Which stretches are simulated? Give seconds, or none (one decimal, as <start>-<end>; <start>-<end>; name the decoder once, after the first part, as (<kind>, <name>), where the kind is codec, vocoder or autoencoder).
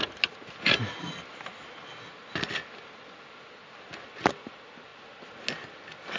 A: none